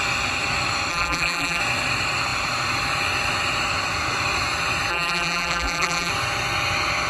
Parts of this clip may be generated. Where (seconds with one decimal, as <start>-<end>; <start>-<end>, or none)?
0.9-1.6; 4.9-6.1